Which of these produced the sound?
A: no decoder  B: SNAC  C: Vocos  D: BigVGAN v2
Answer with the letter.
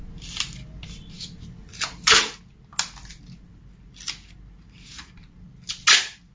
A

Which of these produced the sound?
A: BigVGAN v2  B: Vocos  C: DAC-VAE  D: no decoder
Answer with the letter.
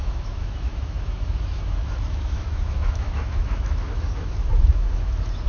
C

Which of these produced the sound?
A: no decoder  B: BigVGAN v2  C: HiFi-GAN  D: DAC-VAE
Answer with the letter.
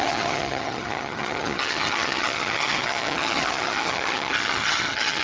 C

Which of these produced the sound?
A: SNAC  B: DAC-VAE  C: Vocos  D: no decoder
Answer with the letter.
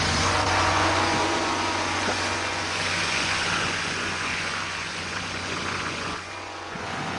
C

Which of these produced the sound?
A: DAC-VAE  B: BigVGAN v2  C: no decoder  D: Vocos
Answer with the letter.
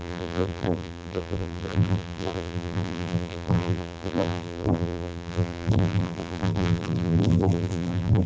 B